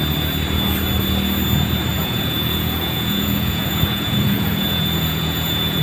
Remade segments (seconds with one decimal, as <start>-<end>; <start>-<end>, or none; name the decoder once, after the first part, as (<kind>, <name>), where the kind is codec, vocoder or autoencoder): 1.9-5.8 (vocoder, Vocos)